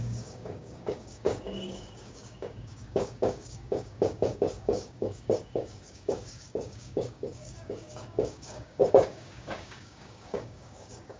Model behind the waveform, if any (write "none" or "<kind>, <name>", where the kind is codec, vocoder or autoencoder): codec, DAC